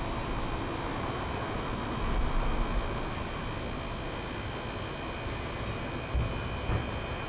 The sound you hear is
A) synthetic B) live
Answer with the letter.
B